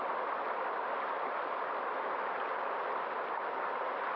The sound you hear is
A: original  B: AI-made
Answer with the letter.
A